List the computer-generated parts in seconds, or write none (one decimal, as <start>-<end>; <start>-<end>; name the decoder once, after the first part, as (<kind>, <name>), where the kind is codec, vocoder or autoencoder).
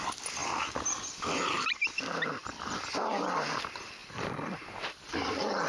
0.4-2.0 (vocoder, BigVGAN v2); 2.4-2.9; 4.0-5.0